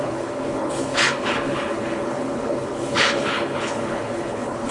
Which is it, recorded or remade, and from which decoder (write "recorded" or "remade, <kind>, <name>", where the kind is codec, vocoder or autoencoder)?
remade, codec, HILCodec